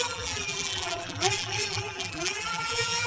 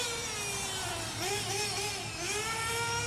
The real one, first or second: second